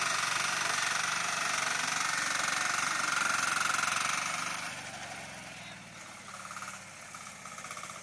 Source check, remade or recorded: recorded